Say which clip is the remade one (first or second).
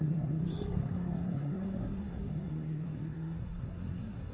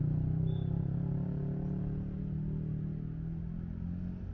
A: first